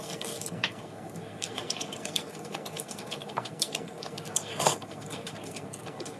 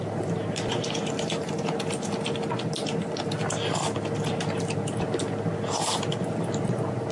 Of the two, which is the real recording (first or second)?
second